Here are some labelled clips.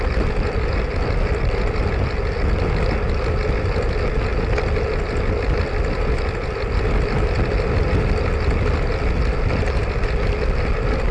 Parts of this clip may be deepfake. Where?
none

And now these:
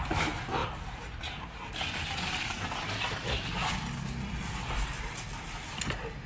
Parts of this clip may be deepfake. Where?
none

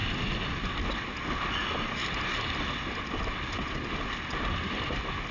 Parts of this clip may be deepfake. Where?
none

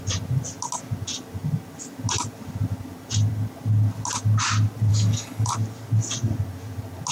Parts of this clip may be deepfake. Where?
4.9-5.5 (codec, DAC)

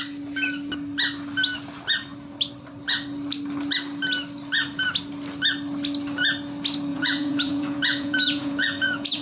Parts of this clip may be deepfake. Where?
6.9-9.2 (vocoder, Vocos)

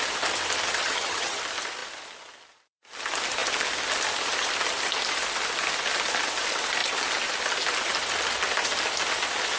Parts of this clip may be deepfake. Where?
0.8-1.4 (vocoder, HiFi-GAN)

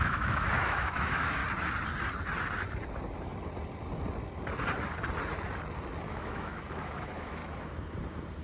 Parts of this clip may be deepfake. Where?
0.0-1.4 (autoencoder, DAC-VAE); 6.1-7.4